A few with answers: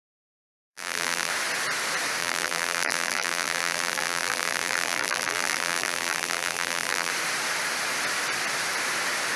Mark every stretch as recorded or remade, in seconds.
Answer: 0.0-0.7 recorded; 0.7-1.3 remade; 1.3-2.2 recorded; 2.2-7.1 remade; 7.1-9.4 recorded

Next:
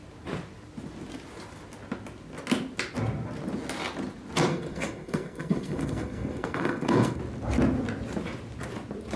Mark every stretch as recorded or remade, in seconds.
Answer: 0.0-4.5 recorded; 4.5-7.2 remade; 7.2-9.2 recorded